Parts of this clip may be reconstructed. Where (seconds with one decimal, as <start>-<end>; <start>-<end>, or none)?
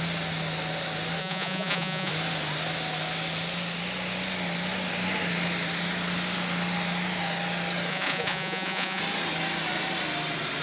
1.2-2.1; 7.9-9.0